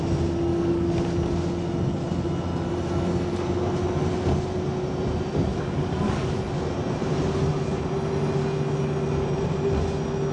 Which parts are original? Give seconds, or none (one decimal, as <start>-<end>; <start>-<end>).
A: 0.0-0.5; 1.0-5.5; 6.3-10.3